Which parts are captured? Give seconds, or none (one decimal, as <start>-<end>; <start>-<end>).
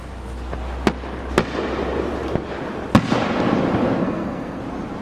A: 0.0-4.0; 4.6-5.0